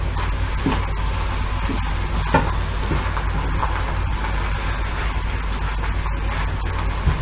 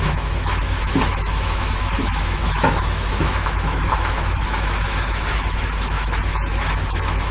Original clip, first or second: first